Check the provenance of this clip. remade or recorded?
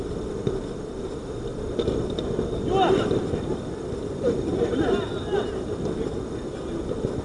recorded